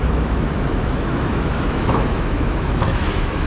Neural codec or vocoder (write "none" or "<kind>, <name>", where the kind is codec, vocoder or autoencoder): autoencoder, DAC-VAE